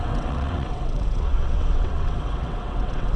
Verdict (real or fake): fake